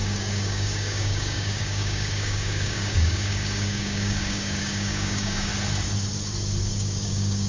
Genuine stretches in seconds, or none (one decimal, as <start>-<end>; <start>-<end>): 5.5-6.6